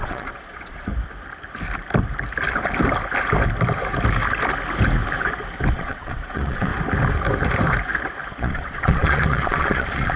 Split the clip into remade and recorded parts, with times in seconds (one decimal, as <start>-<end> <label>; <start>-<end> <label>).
0.0-0.9 remade; 0.9-5.7 recorded; 5.7-6.7 remade; 6.7-8.3 recorded; 8.3-10.2 remade